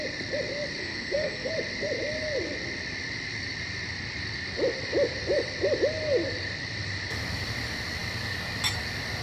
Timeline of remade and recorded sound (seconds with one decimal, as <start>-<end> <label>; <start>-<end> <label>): 0.0-0.8 recorded; 0.8-1.5 remade; 1.5-9.2 recorded